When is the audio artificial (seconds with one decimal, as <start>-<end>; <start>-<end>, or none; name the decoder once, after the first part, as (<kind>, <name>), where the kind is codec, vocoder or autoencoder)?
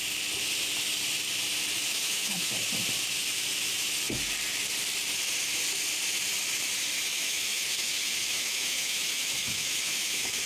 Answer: 1.9-2.5 (autoencoder, DAC-VAE); 7.1-10.5